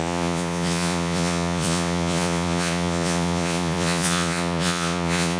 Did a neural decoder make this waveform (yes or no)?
yes